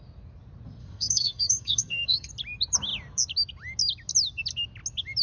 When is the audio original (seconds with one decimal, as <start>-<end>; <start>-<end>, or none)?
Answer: 0.0-0.8; 2.3-5.2